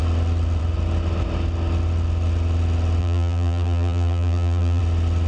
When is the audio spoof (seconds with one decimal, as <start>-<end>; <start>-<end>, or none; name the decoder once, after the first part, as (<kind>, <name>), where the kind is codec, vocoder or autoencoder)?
3.0-4.8 (vocoder, BigVGAN v2)